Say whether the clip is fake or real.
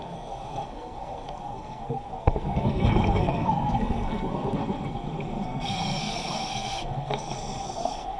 fake